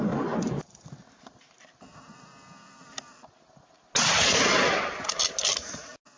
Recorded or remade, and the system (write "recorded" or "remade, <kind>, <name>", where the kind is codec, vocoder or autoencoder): recorded